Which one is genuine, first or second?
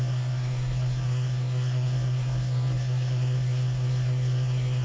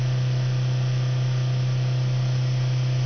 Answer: second